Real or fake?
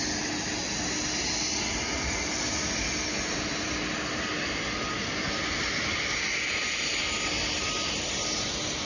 real